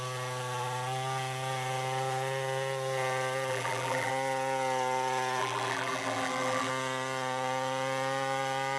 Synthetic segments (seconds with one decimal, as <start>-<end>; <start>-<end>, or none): 3.5-4.1; 5.4-6.7